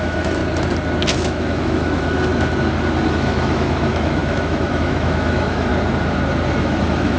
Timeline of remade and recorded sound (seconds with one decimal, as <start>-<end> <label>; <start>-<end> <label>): 0.0-0.4 remade; 0.4-1.1 recorded; 1.1-2.3 remade; 2.3-3.1 recorded; 3.1-5.7 remade; 5.7-6.6 recorded; 6.6-7.2 remade